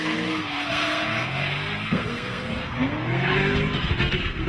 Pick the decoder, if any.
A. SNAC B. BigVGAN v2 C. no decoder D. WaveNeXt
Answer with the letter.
A